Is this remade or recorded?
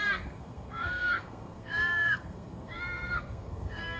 remade